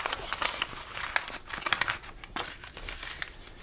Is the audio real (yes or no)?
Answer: yes